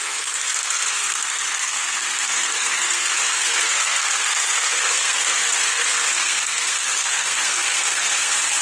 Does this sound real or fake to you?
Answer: fake